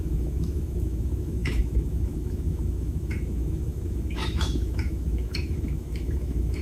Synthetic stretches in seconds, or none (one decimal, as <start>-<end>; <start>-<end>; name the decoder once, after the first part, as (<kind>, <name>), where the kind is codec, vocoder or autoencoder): 0.0-6.6 (autoencoder, DAC-VAE)